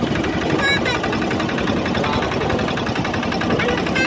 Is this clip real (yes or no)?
yes